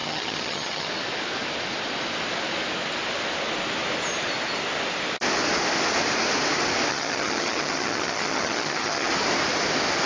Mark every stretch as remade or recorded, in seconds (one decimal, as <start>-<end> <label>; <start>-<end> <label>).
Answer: 0.0-0.9 remade; 0.9-6.9 recorded; 6.9-9.1 remade; 9.1-10.1 recorded

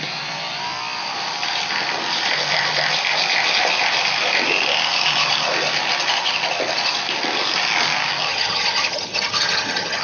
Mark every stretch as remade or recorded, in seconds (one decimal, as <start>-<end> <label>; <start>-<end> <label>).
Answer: 0.0-8.3 recorded; 8.3-10.0 remade

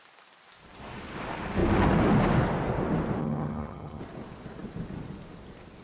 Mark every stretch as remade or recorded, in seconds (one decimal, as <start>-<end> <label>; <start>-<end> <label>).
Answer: 0.0-3.2 recorded; 3.2-4.0 remade; 4.0-5.8 recorded

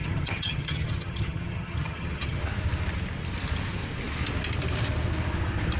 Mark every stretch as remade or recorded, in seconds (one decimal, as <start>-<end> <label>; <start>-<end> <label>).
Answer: 0.0-2.4 remade; 2.4-5.8 recorded